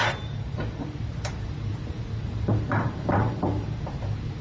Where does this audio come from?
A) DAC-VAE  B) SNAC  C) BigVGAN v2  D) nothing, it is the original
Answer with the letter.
C